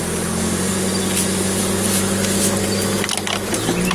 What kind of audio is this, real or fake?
real